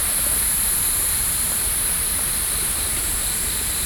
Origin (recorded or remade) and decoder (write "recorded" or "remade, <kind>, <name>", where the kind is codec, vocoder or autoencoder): remade, vocoder, BigVGAN v2